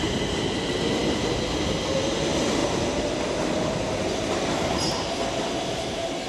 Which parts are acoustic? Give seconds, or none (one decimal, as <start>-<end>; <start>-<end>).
0.0-6.3